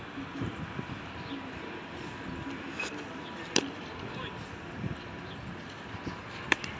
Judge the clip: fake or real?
fake